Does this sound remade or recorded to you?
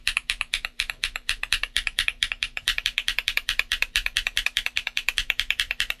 remade